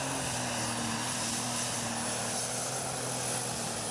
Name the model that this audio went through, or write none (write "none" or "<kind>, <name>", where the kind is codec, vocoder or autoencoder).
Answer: none